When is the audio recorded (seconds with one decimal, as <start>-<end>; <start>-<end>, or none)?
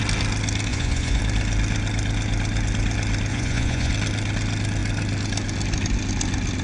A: 0.0-0.7; 1.2-3.3; 3.9-6.6